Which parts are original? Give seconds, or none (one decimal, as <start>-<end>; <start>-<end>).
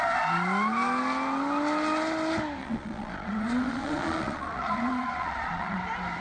0.0-2.6; 5.8-6.2